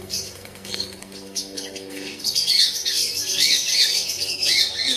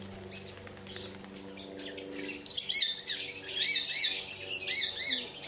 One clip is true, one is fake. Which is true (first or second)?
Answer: second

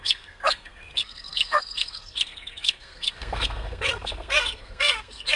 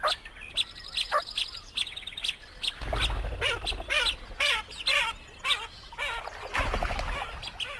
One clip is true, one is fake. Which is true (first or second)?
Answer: second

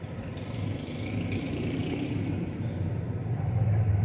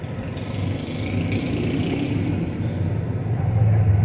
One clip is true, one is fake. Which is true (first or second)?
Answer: second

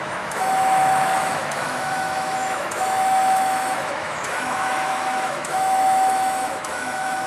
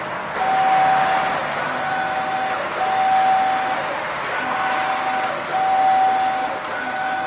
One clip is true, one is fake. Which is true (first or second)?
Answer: second